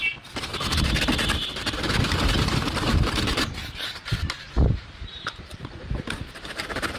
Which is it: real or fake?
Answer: fake